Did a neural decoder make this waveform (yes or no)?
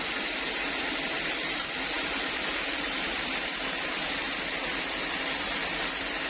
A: yes